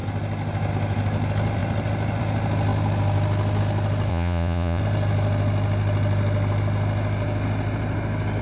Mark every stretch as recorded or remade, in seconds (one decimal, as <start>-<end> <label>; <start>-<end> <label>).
0.0-4.1 recorded; 4.1-4.8 remade; 4.8-8.4 recorded